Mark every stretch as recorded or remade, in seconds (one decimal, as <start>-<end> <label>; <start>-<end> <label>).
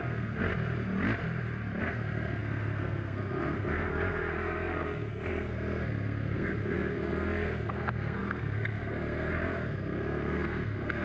0.0-0.5 remade; 0.5-1.8 recorded; 1.8-11.0 remade